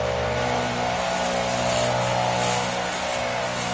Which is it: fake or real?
real